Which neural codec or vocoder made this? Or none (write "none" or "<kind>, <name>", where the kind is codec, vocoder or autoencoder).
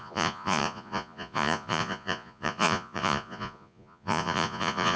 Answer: vocoder, Vocos